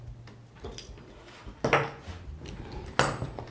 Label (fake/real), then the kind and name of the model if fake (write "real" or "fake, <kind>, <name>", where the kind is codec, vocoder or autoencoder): real